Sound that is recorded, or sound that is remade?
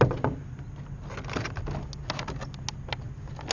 recorded